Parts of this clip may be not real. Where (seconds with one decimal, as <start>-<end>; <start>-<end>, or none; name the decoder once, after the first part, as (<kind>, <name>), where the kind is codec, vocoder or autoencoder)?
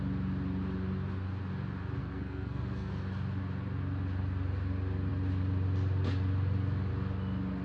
2.0-2.9 (codec, SNAC)